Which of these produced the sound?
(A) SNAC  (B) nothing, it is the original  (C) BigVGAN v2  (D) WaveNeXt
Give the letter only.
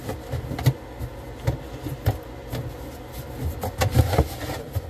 B